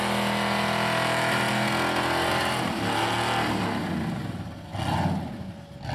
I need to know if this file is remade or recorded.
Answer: recorded